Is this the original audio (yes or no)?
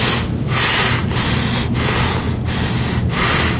yes